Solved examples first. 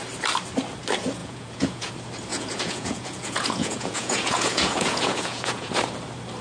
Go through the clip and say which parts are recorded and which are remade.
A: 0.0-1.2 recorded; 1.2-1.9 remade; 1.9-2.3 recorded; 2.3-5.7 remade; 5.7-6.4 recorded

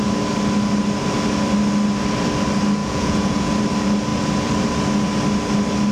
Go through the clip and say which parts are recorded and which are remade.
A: 0.0-2.8 recorded; 2.8-3.5 remade; 3.5-5.9 recorded

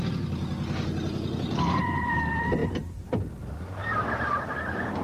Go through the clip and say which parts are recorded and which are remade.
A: 0.0-5.0 recorded

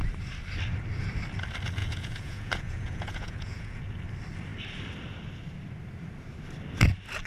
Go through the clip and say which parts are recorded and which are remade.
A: 0.0-1.8 recorded; 1.8-3.8 remade; 3.8-7.3 recorded

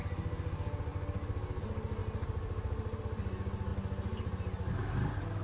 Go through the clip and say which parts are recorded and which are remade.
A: 0.0-5.4 recorded